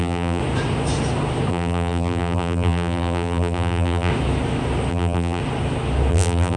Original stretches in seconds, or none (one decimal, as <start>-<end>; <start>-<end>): 0.4-1.5; 4.1-4.9; 5.4-6.1